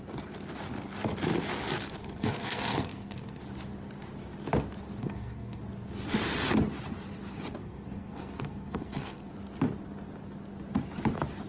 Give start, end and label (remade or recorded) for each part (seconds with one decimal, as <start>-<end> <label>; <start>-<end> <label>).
0.0-2.0 recorded; 2.0-3.4 remade; 3.4-5.0 recorded; 5.0-5.6 remade; 5.6-7.6 recorded; 7.6-9.3 remade; 9.3-11.5 recorded